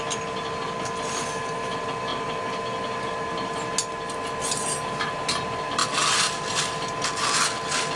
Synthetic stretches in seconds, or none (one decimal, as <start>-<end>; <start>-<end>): none